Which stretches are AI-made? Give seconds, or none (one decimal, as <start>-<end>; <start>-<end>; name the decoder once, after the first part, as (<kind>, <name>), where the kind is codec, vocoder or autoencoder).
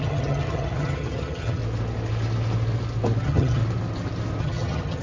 0.0-1.6 (vocoder, HiFi-GAN); 3.2-3.6; 4.4-5.0